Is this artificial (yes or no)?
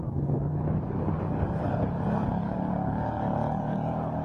yes